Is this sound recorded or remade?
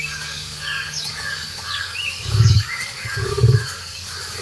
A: remade